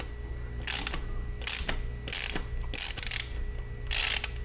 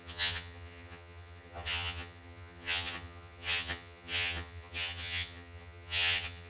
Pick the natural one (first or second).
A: first